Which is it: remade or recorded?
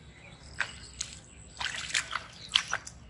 recorded